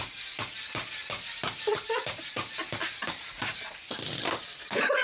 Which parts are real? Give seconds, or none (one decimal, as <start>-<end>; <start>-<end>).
0.0-5.0